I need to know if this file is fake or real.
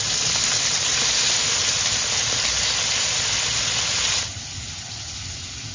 real